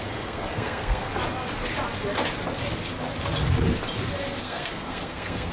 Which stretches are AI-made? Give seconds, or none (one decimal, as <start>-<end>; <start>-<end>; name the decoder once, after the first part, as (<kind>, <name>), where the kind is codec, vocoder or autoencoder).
0.0-1.1 (codec, SNAC); 4.4-5.5